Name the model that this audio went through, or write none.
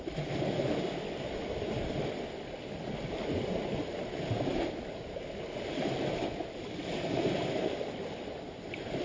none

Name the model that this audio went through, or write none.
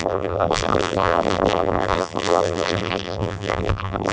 vocoder, BigVGAN v2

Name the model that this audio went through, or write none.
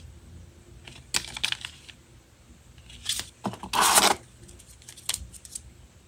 none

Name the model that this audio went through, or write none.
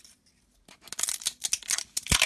none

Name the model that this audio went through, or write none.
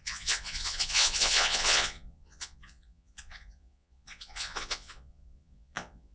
vocoder, Vocos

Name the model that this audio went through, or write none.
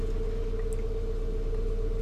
none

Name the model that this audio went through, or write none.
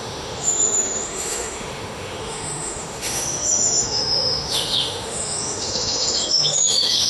autoencoder, DAC-VAE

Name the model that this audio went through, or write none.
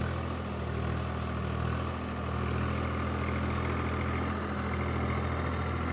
none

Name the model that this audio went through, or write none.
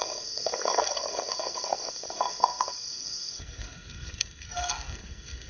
codec, SNAC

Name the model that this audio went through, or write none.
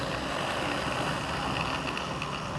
none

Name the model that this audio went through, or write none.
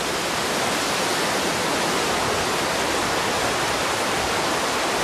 vocoder, BigVGAN v2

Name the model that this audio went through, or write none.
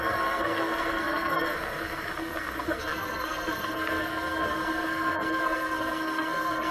codec, SNAC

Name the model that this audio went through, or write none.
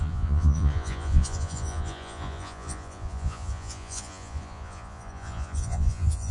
vocoder, Vocos